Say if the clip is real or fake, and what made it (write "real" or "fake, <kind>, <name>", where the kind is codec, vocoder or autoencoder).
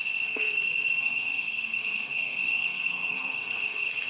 fake, codec, SNAC